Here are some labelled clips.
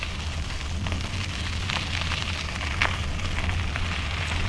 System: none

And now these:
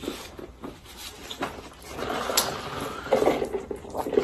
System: none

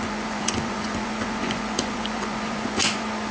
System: vocoder, Vocos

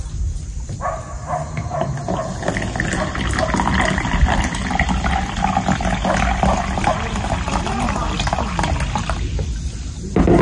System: none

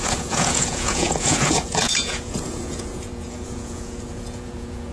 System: vocoder, Vocos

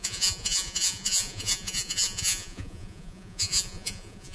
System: vocoder, Vocos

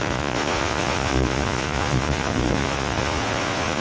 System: vocoder, Vocos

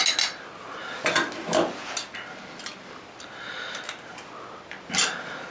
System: none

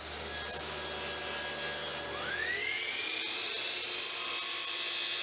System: none